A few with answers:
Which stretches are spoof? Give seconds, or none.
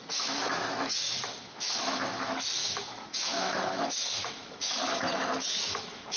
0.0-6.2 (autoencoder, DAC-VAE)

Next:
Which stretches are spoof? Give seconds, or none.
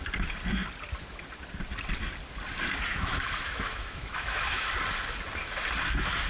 2.9-4.7 (autoencoder, DAC-VAE)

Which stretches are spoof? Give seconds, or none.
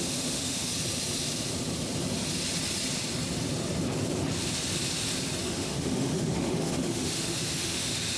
0.0-0.7 (autoencoder, DAC-VAE); 5.4-8.2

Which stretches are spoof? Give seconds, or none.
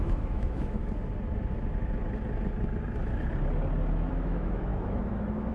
0.0-0.8 (autoencoder, DAC-VAE); 4.1-5.5